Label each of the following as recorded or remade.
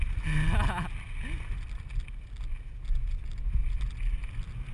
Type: recorded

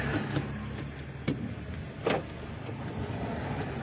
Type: recorded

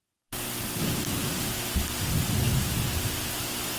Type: recorded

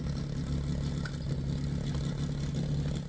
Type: recorded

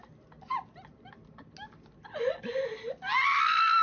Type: recorded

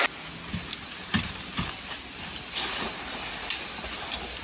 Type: recorded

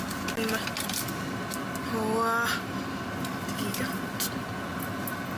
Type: recorded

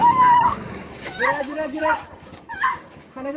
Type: remade